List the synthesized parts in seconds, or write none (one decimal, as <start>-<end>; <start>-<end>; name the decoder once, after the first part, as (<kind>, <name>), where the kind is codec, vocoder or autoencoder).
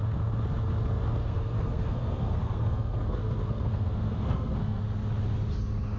1.2-4.8 (codec, SNAC)